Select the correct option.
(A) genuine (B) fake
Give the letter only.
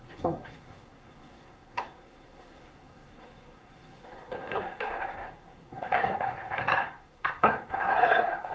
B